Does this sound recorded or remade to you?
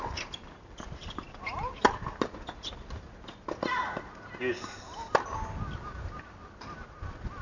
recorded